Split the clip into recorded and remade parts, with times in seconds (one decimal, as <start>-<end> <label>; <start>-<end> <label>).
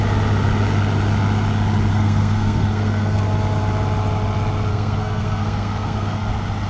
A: 0.0-1.9 recorded; 1.9-3.2 remade; 3.2-4.7 recorded; 4.7-6.3 remade; 6.3-6.7 recorded